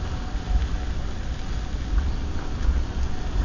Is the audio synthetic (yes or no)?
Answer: no